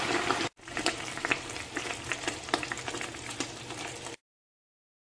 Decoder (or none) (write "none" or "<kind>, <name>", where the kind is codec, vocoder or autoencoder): vocoder, BigVGAN v2